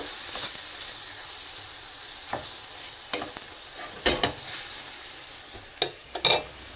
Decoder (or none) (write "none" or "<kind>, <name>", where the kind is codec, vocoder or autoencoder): none